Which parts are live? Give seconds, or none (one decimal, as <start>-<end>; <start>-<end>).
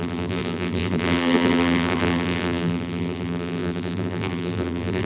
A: none